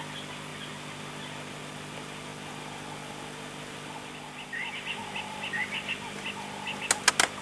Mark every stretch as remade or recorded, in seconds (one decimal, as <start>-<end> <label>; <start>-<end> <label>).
0.0-7.4 recorded